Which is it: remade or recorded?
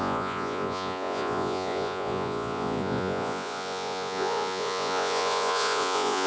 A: remade